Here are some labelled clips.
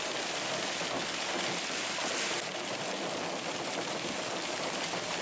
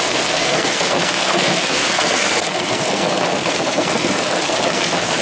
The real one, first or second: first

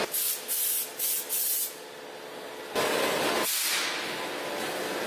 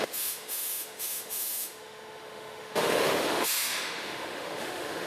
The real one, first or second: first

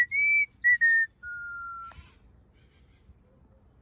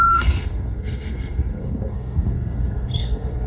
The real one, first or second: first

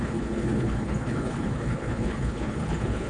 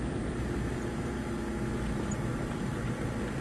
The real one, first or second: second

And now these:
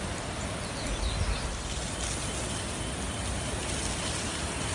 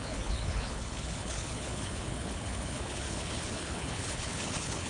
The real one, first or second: first